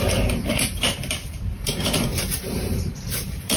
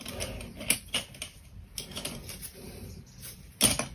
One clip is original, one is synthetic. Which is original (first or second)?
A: second